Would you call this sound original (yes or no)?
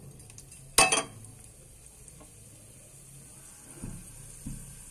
yes